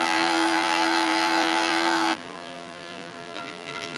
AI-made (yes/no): yes